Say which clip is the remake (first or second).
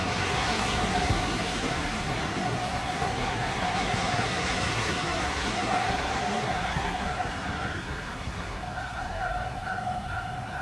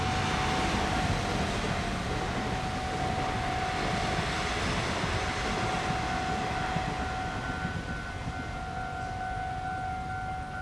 first